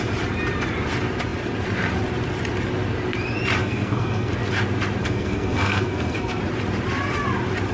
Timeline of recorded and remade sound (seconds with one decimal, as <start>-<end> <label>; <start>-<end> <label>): 0.0-3.6 recorded; 3.6-4.3 remade; 4.3-5.0 recorded; 5.0-6.4 remade; 6.4-7.7 recorded